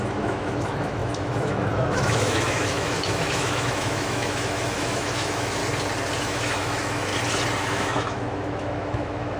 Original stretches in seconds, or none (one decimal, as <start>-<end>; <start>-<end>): 5.6-6.2; 7.1-7.6